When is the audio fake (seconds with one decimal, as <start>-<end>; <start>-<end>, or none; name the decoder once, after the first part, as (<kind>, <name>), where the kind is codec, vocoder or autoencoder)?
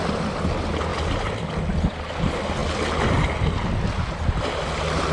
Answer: none